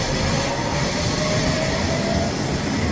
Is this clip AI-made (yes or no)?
no